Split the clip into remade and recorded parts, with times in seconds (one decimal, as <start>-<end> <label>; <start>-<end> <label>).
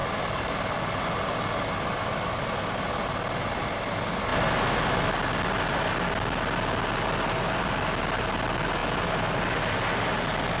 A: 0.0-10.6 recorded